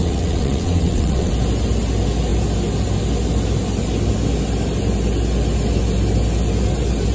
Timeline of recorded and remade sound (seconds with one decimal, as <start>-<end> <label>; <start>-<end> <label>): 0.0-1.3 remade; 1.3-7.1 recorded